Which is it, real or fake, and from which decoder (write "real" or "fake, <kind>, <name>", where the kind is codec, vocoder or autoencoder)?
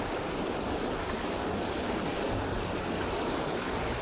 real